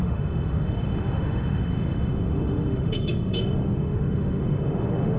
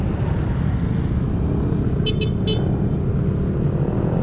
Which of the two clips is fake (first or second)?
first